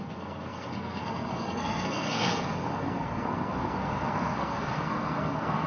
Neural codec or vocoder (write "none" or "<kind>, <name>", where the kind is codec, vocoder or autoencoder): codec, SNAC